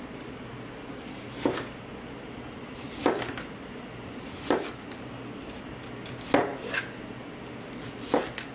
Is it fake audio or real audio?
real